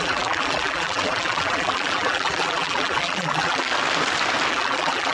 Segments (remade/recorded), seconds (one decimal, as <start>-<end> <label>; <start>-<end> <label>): 0.0-3.7 remade; 3.7-4.5 recorded; 4.5-5.1 remade